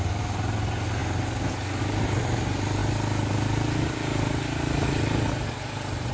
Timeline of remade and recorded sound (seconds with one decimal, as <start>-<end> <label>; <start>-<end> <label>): 0.0-6.1 recorded